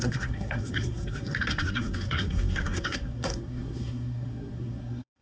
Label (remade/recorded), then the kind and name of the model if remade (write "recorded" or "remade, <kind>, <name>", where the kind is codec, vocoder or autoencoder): remade, codec, SNAC